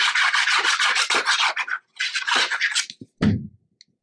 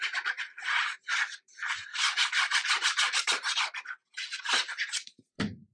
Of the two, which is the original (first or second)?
first